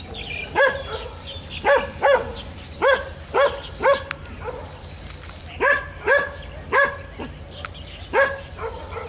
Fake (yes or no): no